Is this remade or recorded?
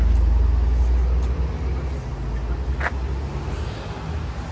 recorded